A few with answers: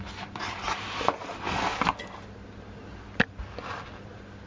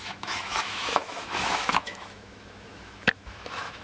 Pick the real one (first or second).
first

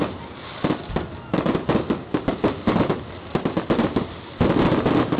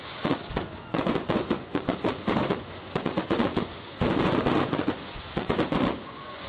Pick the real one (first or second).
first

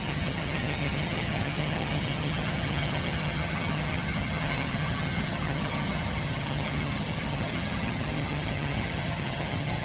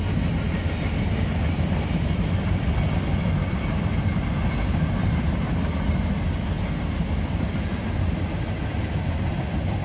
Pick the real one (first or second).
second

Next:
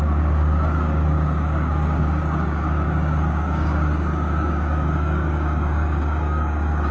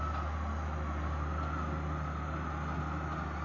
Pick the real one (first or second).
second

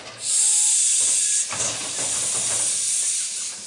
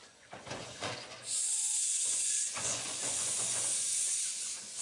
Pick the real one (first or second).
first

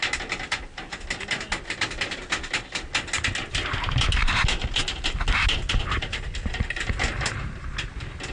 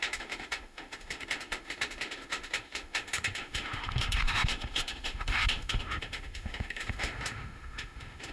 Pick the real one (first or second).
first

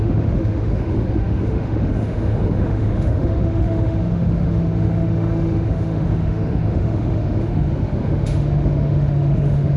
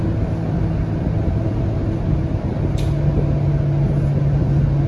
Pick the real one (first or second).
second